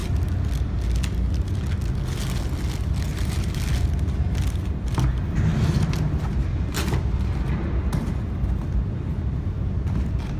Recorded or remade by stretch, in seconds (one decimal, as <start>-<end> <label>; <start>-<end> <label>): 0.0-3.1 recorded; 3.1-3.6 remade; 3.6-10.4 recorded